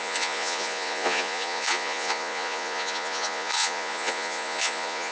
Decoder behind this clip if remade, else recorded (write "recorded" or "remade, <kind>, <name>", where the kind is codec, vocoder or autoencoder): remade, vocoder, Vocos